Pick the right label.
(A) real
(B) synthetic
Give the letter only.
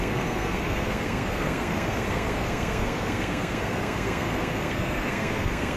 B